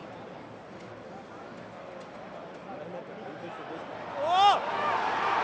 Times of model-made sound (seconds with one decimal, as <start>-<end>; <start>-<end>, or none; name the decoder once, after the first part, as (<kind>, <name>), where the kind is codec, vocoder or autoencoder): none